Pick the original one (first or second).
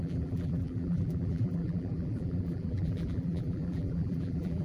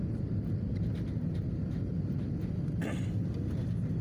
second